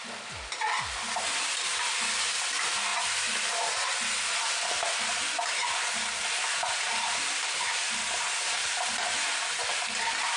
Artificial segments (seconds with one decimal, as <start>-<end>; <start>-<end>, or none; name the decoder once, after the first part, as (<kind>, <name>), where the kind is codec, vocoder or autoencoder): 0.0-2.9 (vocoder, BigVGAN v2); 5.1-10.4